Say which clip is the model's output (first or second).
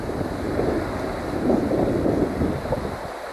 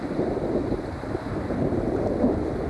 second